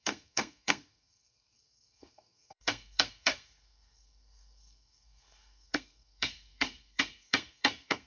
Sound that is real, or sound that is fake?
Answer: fake